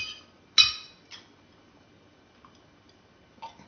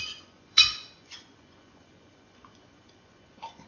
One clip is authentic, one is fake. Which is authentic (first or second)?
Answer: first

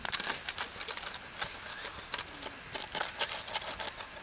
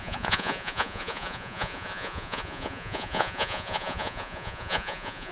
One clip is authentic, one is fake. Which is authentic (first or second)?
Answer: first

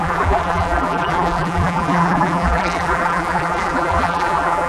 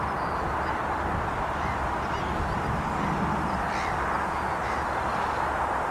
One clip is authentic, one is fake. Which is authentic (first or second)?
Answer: second